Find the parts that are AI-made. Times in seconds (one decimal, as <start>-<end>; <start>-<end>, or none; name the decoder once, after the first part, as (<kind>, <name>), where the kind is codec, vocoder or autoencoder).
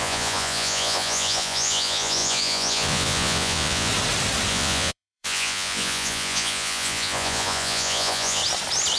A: 0.0-3.9 (vocoder, Vocos); 4.5-8.4